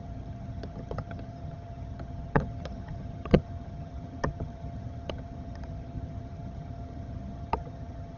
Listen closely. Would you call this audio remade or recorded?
remade